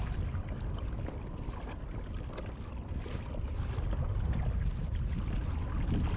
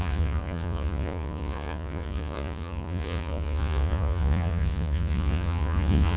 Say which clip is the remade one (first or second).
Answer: second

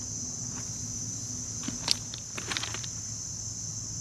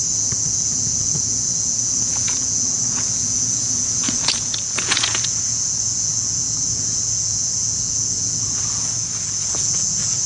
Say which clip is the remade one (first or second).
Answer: second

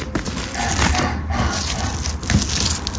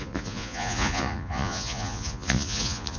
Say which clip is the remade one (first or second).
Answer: second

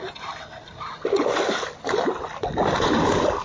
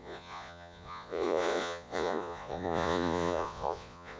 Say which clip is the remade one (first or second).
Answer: second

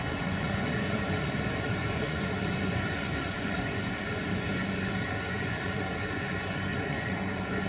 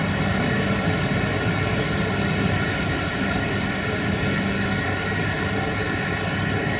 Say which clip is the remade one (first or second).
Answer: first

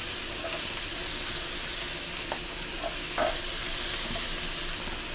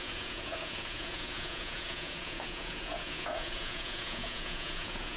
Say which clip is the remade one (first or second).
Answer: second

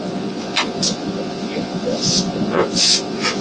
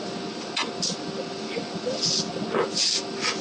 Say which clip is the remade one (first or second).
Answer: first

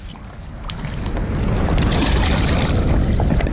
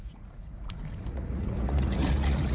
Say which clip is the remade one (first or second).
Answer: second